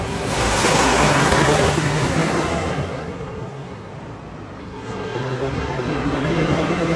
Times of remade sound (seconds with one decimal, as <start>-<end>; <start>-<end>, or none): 0.0-3.9; 4.6-7.0

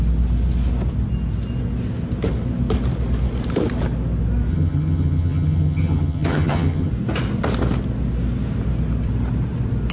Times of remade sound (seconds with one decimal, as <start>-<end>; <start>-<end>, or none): 4.5-6.9

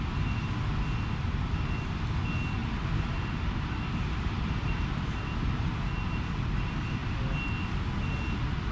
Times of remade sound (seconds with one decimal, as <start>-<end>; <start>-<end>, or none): 2.6-5.9

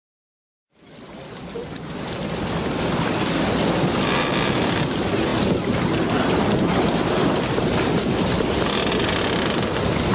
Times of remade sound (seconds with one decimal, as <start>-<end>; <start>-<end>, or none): none